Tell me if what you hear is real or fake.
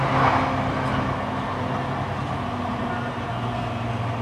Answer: real